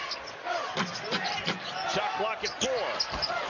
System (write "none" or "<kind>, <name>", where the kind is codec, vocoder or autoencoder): none